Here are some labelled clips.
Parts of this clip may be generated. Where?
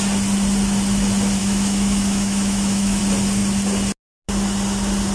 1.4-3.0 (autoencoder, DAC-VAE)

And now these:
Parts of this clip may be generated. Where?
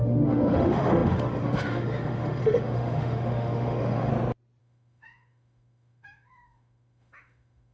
0.0-4.1 (autoencoder, DAC-VAE); 4.6-7.7